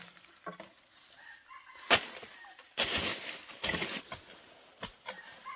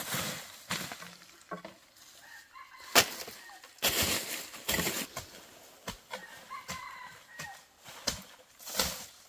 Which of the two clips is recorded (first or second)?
second